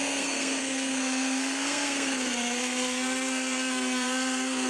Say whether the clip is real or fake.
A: fake